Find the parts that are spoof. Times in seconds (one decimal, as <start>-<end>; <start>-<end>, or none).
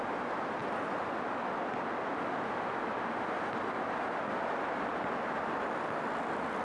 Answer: none